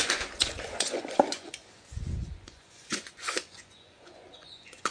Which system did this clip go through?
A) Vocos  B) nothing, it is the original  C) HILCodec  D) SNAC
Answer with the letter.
A